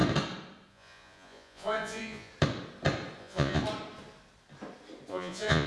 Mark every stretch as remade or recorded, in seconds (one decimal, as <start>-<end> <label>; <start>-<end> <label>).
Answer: 0.0-0.7 recorded; 0.7-2.3 remade; 2.3-3.2 recorded; 3.2-3.6 remade; 3.6-5.1 recorded; 5.1-5.7 remade